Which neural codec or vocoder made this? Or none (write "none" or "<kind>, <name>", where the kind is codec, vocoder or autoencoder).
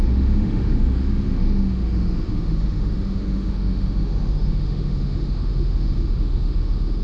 autoencoder, DAC-VAE